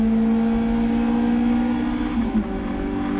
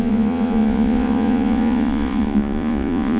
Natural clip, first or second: first